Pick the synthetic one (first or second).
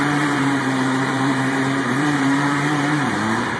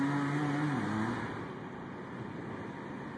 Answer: first